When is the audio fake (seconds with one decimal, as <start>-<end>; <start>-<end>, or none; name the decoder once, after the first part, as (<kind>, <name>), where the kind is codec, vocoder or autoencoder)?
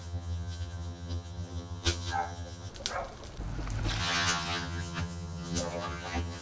0.0-2.7 (vocoder, HiFi-GAN); 4.0-6.4